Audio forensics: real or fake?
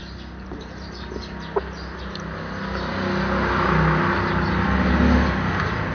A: real